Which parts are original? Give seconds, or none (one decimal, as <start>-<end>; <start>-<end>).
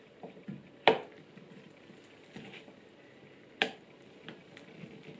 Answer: 0.0-5.2